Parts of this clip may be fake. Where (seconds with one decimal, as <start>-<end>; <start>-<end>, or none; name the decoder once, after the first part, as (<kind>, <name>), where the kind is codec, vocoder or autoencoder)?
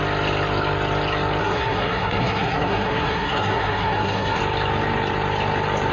1.4-4.4 (codec, SNAC)